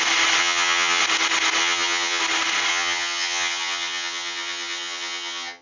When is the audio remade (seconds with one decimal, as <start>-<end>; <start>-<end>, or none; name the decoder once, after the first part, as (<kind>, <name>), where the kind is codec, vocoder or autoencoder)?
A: 0.4-1.0 (vocoder, HiFi-GAN); 1.6-2.2; 2.7-5.6